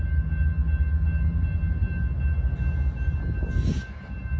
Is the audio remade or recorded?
recorded